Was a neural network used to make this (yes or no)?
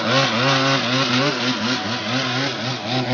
no